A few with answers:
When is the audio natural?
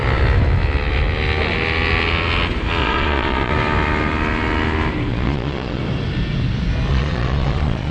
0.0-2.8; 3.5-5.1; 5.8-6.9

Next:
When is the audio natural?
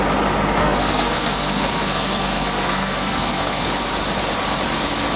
0.0-0.6; 3.7-5.2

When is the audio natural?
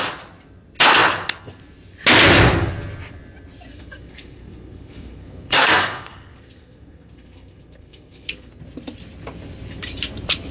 0.0-3.7; 8.6-10.5